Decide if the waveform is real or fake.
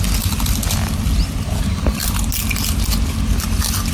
real